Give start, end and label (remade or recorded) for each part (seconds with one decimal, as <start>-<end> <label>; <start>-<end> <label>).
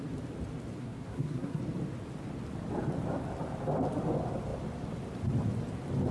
0.0-0.8 recorded; 0.8-1.6 remade; 1.6-6.1 recorded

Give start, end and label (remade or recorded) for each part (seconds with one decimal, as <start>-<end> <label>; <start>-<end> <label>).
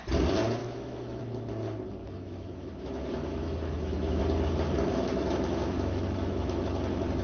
0.0-0.6 recorded; 0.6-1.2 remade; 1.2-2.0 recorded; 2.0-4.2 remade; 4.2-4.9 recorded; 4.9-6.6 remade; 6.6-7.2 recorded